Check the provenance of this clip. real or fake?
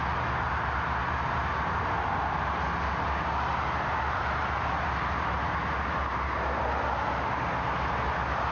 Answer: real